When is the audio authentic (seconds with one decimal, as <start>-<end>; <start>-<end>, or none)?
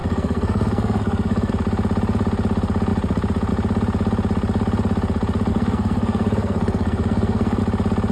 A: 1.5-5.5; 7.6-8.1